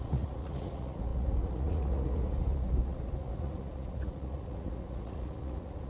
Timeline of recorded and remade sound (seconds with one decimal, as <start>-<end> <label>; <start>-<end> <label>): 0.0-5.9 remade